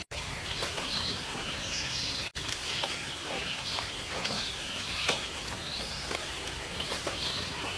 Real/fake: fake